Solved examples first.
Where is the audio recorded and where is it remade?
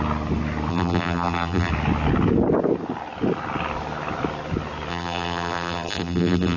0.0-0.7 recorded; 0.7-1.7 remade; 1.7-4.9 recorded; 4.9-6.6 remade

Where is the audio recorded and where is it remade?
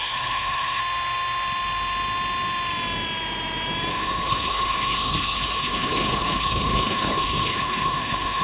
0.0-0.8 remade; 0.8-3.9 recorded; 3.9-8.4 remade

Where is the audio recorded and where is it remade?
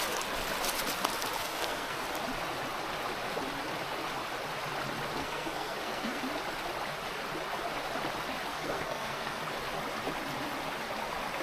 0.0-1.4 recorded; 1.4-2.0 remade; 2.0-5.2 recorded; 5.2-6.2 remade; 6.2-8.5 recorded; 8.5-9.4 remade; 9.4-11.4 recorded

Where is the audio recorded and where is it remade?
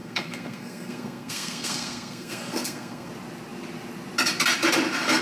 0.0-3.1 remade; 3.1-5.2 recorded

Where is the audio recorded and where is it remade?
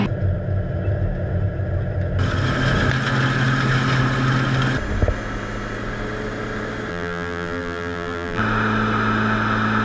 0.0-6.9 recorded; 6.9-8.4 remade; 8.4-9.8 recorded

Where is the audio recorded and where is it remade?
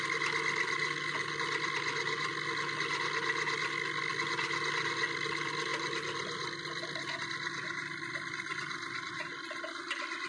0.0-5.7 recorded; 5.7-7.2 remade; 7.2-9.3 recorded; 9.3-10.3 remade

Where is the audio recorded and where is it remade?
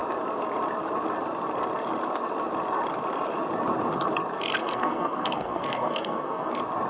0.0-4.6 recorded; 4.6-6.5 remade; 6.5-6.9 recorded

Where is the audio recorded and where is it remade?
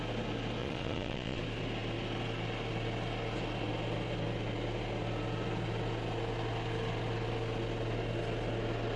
0.0-0.6 recorded; 0.6-1.4 remade; 1.4-9.0 recorded